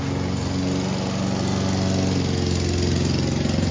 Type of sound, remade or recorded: recorded